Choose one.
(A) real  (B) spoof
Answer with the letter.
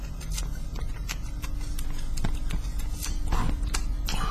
B